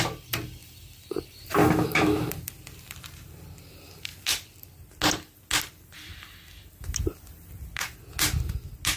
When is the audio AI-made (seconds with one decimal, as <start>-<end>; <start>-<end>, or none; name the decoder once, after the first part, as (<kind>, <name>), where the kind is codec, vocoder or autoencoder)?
1.6-2.3 (autoencoder, DAC-VAE)